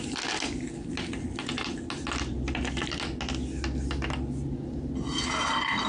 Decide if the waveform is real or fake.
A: real